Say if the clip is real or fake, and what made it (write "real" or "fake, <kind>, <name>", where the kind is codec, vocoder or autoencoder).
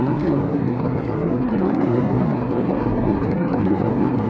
fake, codec, SNAC